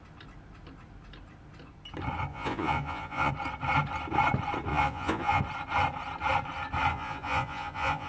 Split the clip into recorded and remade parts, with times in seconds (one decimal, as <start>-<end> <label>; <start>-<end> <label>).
0.0-2.3 recorded; 2.3-3.3 remade; 3.3-4.7 recorded; 4.7-5.4 remade; 5.4-6.9 recorded; 6.9-8.1 remade